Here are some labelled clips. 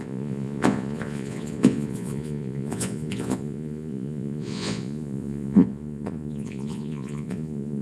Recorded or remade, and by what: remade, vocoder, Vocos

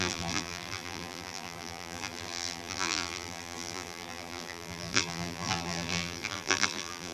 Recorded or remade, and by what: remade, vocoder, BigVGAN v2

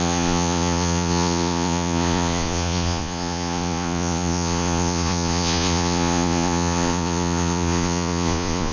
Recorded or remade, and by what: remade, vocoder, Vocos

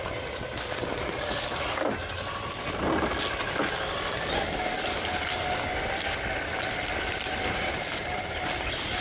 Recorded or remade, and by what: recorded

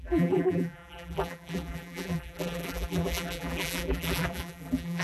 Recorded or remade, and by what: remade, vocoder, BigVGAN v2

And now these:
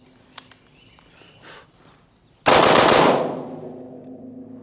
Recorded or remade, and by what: recorded